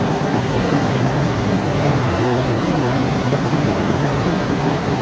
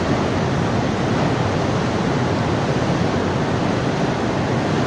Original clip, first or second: second